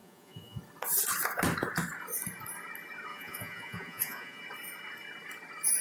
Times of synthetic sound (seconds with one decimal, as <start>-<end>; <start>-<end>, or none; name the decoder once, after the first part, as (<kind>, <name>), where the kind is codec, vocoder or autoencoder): 0.0-0.6 (vocoder, Vocos); 3.1-4.4